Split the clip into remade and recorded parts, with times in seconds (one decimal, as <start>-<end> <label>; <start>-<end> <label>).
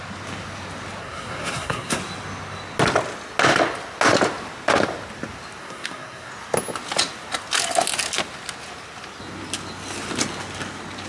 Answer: 0.0-1.0 recorded; 1.0-2.0 remade; 2.0-5.6 recorded; 5.6-6.3 remade; 6.3-11.1 recorded